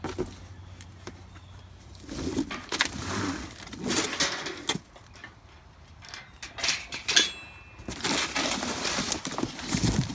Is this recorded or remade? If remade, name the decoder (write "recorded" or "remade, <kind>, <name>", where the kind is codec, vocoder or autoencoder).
recorded